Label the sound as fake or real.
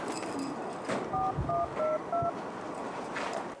real